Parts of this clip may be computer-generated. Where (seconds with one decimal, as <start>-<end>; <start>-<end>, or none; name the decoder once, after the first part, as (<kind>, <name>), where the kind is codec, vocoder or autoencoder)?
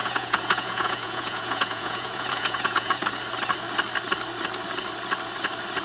0.0-3.0 (vocoder, Vocos)